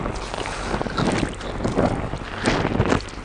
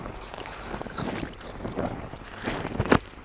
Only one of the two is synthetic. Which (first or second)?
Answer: second